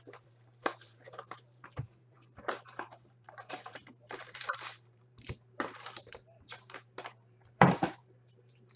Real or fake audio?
fake